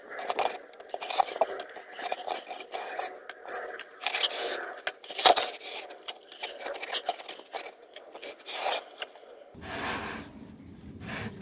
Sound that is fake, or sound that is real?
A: real